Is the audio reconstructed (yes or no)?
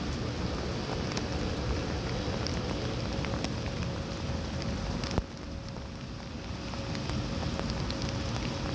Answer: no